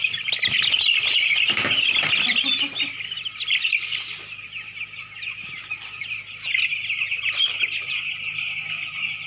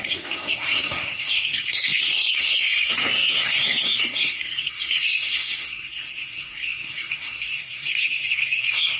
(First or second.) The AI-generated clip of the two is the second